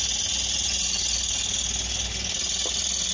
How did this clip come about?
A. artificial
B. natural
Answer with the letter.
B